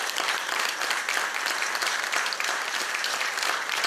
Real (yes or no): no